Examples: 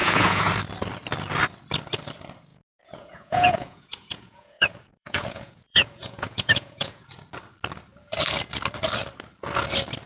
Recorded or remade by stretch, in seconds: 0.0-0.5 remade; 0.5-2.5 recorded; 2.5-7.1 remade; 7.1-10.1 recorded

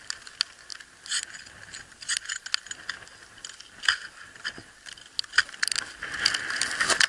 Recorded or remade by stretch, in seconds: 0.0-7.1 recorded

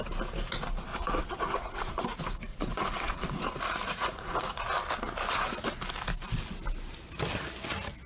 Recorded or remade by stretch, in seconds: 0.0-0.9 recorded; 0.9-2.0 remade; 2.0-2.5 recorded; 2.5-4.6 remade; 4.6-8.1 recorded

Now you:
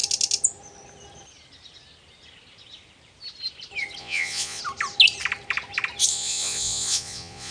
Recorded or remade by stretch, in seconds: 0.0-4.0 recorded; 4.0-4.6 remade; 4.6-6.1 recorded; 6.1-7.5 remade

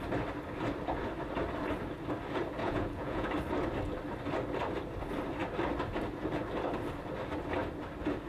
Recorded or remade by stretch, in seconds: 0.0-2.6 recorded; 2.6-3.3 remade; 3.3-8.3 recorded

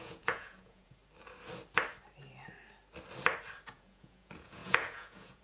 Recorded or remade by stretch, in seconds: 0.0-1.0 remade; 1.0-3.7 recorded; 3.7-5.4 remade

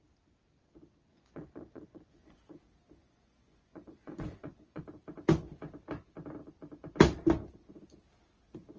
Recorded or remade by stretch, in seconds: 0.0-1.1 recorded; 1.1-2.4 remade; 2.4-3.0 recorded; 3.0-4.8 remade; 4.8-8.8 recorded